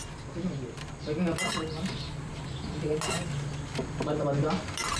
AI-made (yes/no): no